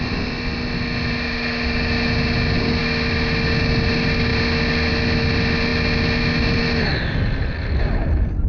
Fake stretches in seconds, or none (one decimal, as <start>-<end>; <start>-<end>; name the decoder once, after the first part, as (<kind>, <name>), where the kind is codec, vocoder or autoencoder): none